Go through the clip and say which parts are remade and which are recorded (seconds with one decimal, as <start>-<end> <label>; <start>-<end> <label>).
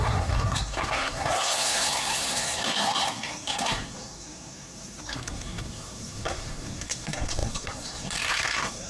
0.0-8.9 remade